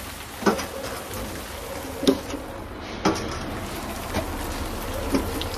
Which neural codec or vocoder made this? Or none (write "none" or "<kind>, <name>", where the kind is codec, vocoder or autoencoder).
none